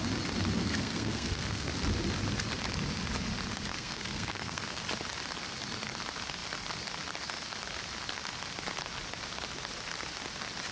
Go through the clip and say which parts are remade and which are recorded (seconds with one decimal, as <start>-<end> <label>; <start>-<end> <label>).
0.0-0.6 recorded; 0.6-1.7 remade; 1.7-3.7 recorded; 3.7-4.8 remade; 4.8-10.7 recorded